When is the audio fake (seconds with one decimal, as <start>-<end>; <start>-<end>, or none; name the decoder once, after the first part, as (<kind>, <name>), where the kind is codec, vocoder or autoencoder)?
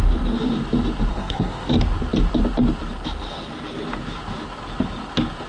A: 1.1-1.7 (codec, SNAC)